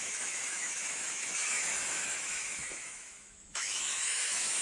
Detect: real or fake fake